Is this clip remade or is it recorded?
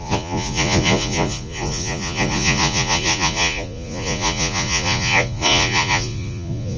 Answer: remade